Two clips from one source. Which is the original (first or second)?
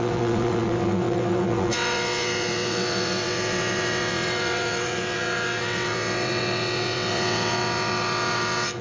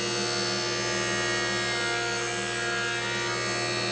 second